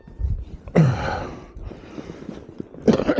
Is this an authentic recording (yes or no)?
no